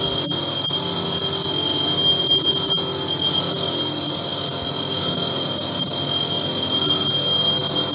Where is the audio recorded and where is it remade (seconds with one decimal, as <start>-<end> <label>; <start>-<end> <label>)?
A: 0.0-7.9 recorded